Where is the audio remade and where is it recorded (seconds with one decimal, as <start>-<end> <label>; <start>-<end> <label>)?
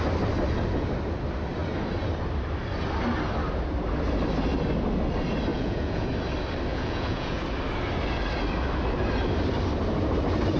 0.0-5.5 recorded; 5.5-6.1 remade; 6.1-6.7 recorded; 6.7-7.4 remade; 7.4-10.6 recorded